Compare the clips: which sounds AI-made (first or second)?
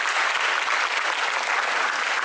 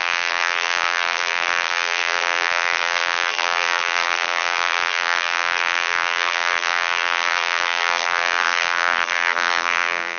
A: second